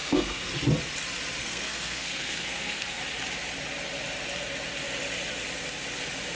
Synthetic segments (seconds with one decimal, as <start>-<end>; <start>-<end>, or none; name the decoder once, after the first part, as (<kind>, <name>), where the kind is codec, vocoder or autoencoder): 0.0-0.5 (codec, SNAC); 1.4-3.0